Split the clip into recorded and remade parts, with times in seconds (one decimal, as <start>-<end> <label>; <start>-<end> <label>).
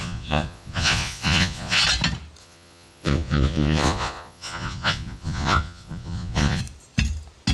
0.0-1.8 remade; 1.8-2.4 recorded; 2.4-6.6 remade; 6.6-7.5 recorded